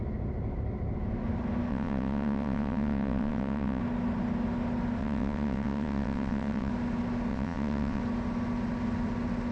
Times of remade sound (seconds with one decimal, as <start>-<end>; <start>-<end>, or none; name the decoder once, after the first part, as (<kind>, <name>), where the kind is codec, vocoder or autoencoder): 1.7-3.8 (vocoder, WaveNeXt); 5.0-6.7; 7.3-8.0